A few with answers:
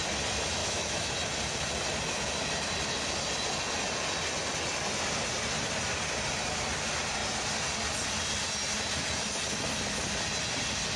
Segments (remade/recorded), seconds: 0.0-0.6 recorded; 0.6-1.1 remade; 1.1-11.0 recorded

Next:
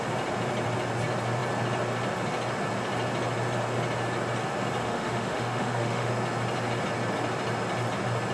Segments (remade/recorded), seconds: 0.0-4.8 recorded; 4.8-6.1 remade; 6.1-8.3 recorded

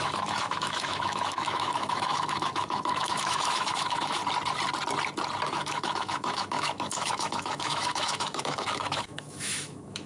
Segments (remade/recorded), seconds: 0.0-4.2 remade; 4.2-5.5 recorded; 5.5-10.1 remade

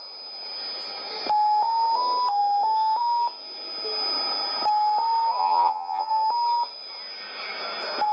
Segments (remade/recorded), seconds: 0.0-5.4 recorded; 5.4-6.1 remade; 6.1-8.1 recorded